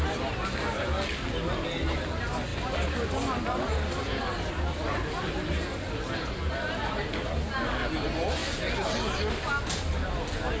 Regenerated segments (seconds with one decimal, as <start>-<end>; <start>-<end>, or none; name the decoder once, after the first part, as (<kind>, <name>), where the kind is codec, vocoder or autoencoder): none